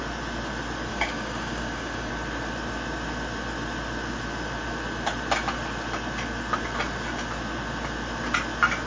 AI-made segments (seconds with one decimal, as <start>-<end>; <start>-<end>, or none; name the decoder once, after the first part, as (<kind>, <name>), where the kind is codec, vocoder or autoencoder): 0.9-2.1 (codec, DAC)